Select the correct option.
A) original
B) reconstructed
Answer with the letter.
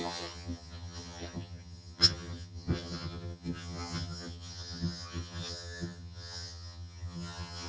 B